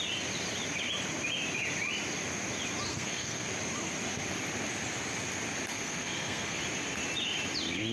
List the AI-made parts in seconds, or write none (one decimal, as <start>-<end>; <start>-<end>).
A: 2.9-3.5; 5.7-6.6